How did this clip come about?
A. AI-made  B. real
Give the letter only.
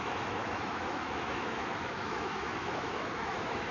A